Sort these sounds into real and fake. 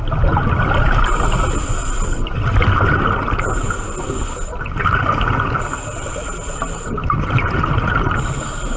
real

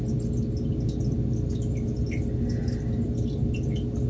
real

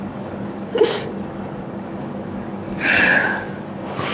fake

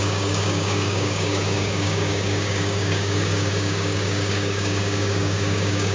fake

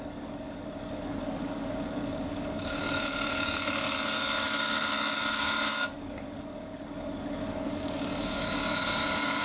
fake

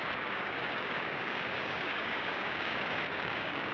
fake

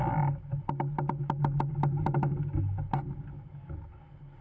real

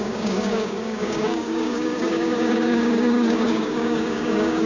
fake